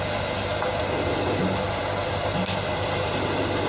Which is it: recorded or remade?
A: recorded